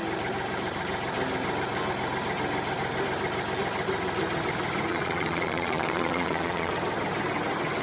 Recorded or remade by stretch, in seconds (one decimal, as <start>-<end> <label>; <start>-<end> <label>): 0.0-4.9 recorded; 4.9-6.7 remade; 6.7-7.8 recorded